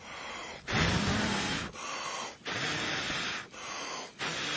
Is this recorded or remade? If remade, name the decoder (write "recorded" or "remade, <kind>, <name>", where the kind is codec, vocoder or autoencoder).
recorded